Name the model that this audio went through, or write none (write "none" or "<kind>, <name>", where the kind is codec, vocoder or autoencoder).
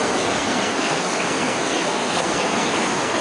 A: codec, SNAC